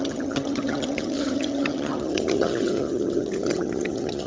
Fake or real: fake